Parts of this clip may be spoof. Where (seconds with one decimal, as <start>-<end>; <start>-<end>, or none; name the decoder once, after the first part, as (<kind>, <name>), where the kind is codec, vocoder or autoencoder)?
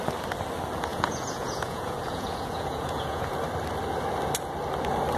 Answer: 0.9-3.3 (vocoder, Vocos)